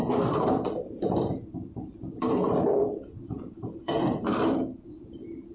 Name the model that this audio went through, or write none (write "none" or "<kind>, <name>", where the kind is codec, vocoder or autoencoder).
vocoder, BigVGAN v2